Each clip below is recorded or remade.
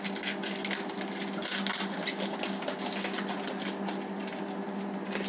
recorded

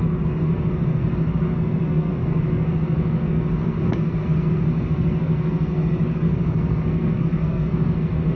remade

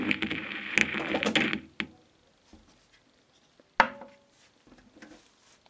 recorded